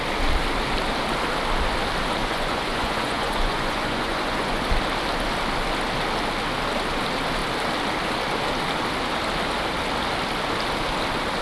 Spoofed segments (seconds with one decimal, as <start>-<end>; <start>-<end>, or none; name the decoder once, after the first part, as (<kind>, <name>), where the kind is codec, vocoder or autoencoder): 2.2-4.6 (vocoder, Vocos)